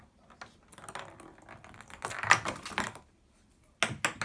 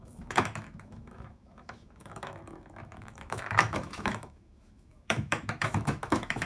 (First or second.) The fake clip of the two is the second